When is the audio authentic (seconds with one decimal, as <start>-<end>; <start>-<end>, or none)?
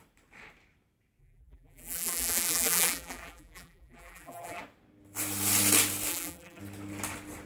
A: 0.0-1.2; 4.6-6.1; 6.6-7.5